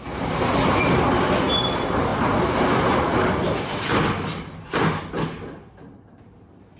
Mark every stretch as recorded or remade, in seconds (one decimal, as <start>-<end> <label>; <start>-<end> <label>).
0.0-6.8 recorded